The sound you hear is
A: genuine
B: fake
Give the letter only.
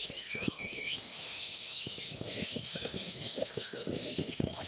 B